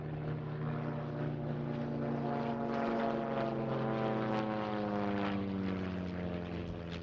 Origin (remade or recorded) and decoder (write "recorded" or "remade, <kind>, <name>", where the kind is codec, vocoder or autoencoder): recorded